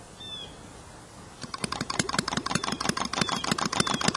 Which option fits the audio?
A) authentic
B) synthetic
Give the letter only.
A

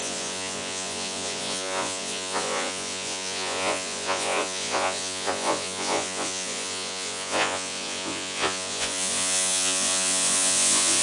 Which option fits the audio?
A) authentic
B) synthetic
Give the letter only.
B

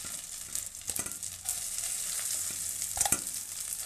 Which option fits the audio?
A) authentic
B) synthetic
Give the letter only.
A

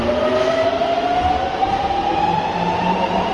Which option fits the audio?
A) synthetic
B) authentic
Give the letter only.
A